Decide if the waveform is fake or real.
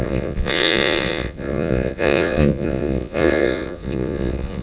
fake